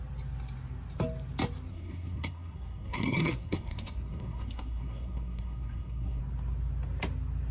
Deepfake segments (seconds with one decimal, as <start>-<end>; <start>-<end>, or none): 1.7-6.2